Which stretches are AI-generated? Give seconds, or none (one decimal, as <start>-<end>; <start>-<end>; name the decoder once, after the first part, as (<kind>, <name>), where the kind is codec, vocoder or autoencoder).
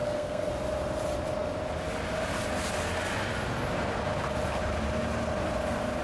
0.0-0.5 (codec, SNAC)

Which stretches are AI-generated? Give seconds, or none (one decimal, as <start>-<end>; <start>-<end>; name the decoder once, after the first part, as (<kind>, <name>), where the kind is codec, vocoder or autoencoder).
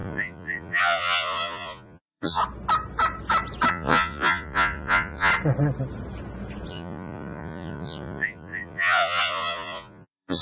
0.0-2.4 (vocoder, Vocos); 3.7-5.3; 6.7-10.4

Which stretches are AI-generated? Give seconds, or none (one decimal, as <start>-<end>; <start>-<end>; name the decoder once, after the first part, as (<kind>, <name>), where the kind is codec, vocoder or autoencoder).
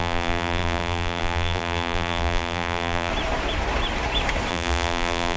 0.0-3.1 (vocoder, BigVGAN v2); 4.5-5.4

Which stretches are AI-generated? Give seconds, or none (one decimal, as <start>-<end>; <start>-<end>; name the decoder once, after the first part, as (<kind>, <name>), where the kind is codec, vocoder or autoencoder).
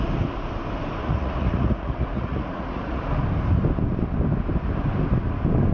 1.0-3.0 (vocoder, Vocos)